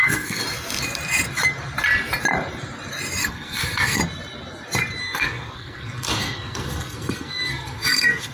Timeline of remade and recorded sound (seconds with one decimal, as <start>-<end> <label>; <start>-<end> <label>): 0.0-0.4 remade; 0.4-3.2 recorded; 3.2-4.0 remade; 4.0-5.0 recorded; 5.0-8.3 remade